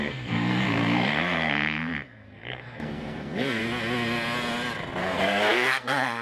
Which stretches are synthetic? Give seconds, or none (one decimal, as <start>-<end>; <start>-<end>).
0.0-3.6; 5.0-6.2